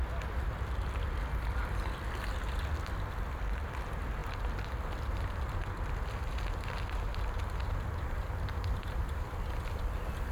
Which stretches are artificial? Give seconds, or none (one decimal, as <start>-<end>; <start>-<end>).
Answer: 7.4-9.3